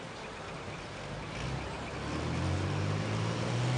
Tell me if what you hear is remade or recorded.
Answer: recorded